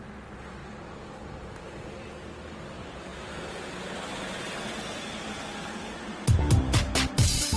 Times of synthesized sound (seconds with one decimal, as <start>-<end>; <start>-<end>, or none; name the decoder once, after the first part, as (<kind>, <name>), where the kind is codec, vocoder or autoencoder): none